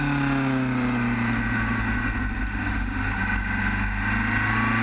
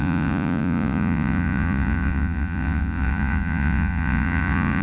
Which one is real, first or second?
first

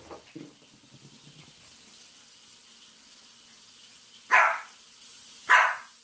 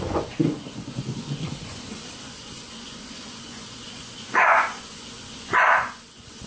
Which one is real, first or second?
first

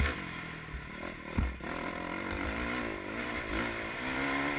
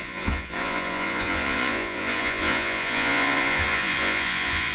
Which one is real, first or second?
first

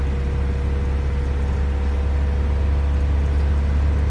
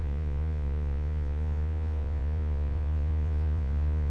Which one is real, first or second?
first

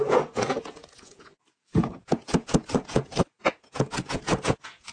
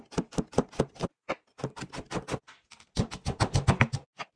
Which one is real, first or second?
second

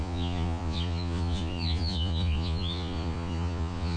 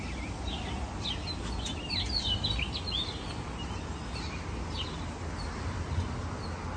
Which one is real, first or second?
second